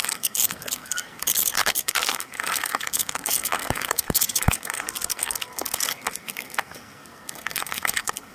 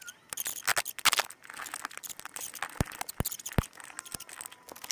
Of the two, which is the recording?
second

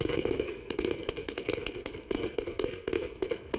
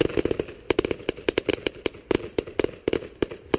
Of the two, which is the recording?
second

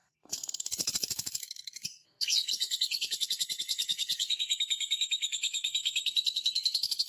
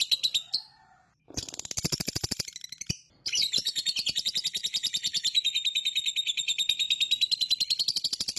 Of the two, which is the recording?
second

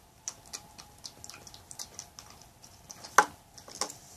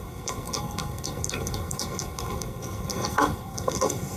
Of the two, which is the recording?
first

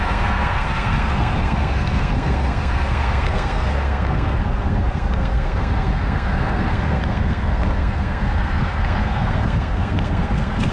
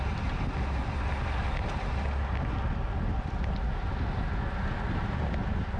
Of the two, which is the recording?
second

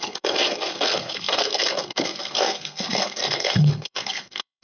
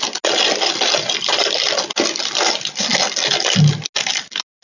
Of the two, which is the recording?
second